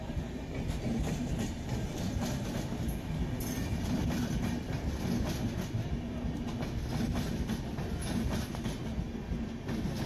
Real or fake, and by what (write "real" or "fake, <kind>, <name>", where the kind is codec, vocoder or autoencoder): real